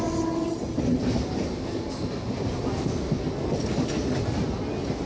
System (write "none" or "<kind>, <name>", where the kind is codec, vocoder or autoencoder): none